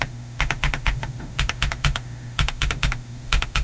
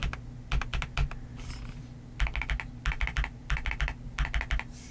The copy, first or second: first